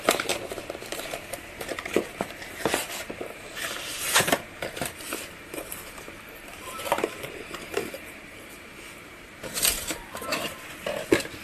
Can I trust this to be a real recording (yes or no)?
no